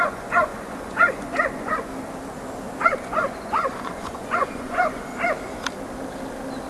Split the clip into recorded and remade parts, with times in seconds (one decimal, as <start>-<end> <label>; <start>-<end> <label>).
0.0-1.9 remade; 1.9-2.8 recorded; 2.8-5.1 remade; 5.1-6.7 recorded